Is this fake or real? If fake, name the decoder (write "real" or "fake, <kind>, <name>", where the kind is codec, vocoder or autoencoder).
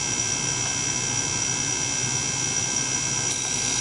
real